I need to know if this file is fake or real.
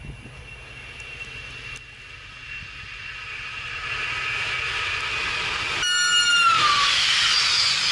real